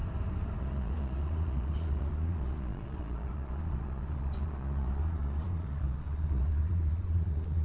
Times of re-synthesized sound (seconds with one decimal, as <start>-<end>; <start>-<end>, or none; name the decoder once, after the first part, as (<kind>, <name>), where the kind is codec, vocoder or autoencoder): 0.6-7.6 (vocoder, Vocos)

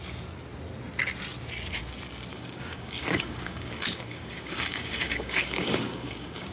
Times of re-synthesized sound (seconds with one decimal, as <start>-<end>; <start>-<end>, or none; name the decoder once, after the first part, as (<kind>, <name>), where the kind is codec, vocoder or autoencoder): 2.3-6.5 (codec, DAC)

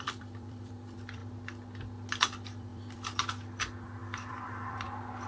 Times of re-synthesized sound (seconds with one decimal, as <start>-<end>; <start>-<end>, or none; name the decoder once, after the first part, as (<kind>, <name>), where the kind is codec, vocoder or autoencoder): 0.0-1.2 (vocoder, BigVGAN v2); 2.2-5.3

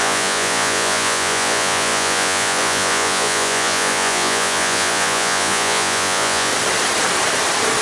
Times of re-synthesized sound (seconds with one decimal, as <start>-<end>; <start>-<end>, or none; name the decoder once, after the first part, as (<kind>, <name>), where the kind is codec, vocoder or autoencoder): 0.0-6.5 (vocoder, Vocos)

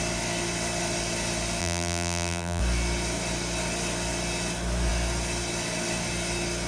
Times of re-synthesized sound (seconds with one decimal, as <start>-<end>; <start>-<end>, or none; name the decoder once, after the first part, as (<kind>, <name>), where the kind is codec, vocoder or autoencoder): 1.6-2.6 (vocoder, BigVGAN v2)

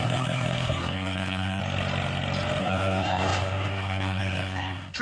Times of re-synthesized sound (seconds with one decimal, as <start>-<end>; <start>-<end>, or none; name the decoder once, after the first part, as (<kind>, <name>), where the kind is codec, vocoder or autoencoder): 0.0-1.6 (codec, SNAC); 2.6-5.0